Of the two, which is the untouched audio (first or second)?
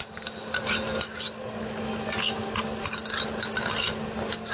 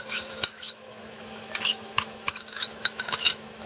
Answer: first